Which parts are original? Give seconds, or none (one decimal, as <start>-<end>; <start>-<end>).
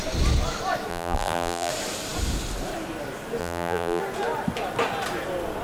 0.0-0.9; 1.7-3.4; 4.0-5.6